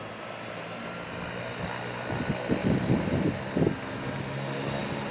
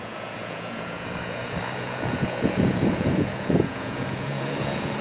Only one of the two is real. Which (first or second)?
first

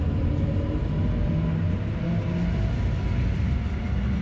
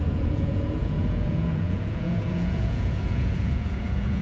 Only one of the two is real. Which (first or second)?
first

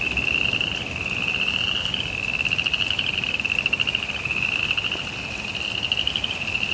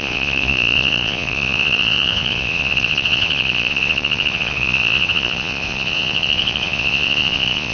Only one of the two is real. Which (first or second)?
first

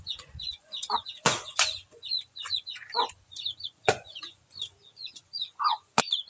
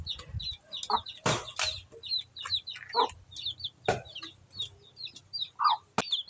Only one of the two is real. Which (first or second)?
second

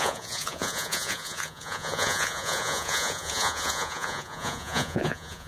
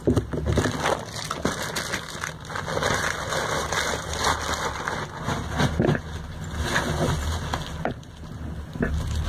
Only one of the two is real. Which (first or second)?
second